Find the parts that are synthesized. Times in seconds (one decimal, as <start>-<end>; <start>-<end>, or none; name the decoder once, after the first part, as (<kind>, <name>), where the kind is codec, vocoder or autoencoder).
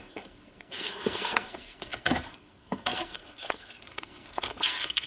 0.0-5.1 (codec, SNAC)